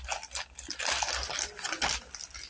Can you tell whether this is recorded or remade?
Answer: recorded